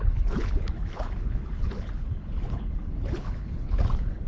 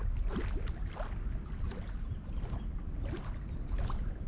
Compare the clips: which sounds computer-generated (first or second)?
first